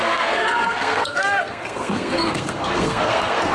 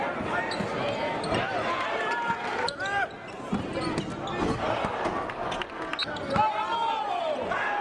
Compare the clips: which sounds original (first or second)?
second